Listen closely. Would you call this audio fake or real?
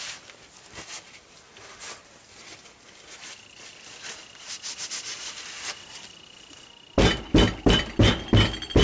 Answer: real